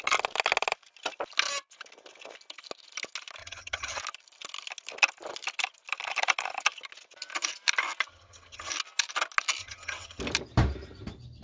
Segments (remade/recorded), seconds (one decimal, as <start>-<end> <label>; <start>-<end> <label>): 0.0-3.4 recorded; 3.4-4.0 remade; 4.0-8.1 recorded; 8.1-8.7 remade; 8.7-9.6 recorded; 9.6-10.2 remade; 10.2-11.4 recorded